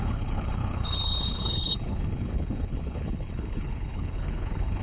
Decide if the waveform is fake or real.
fake